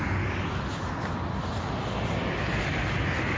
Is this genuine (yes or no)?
yes